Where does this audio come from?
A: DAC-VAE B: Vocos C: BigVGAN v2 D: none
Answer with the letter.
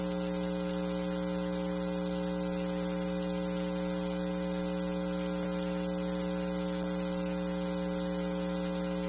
D